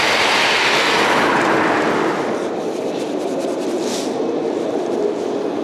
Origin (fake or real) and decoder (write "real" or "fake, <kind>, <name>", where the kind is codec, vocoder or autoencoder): real